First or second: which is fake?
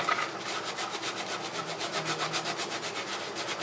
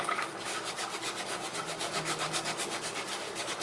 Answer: second